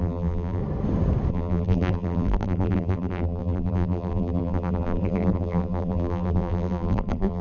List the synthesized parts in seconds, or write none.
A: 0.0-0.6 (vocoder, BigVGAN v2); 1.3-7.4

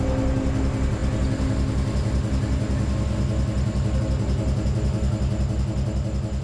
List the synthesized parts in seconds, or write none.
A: none

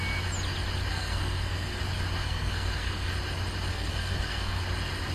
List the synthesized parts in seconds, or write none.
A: 0.9-1.8 (codec, SNAC); 2.2-3.1; 3.7-4.6

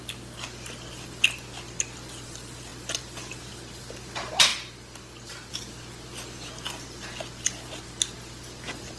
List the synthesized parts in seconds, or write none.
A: none

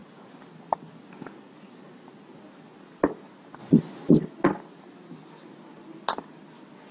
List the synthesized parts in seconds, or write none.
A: 3.6-4.1 (vocoder, BigVGAN v2)

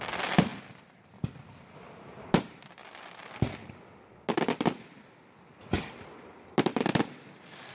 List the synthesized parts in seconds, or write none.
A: none